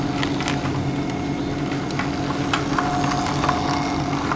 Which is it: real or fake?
real